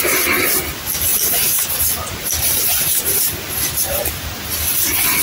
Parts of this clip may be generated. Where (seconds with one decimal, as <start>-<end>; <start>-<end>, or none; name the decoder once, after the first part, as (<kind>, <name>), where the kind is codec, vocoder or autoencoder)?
none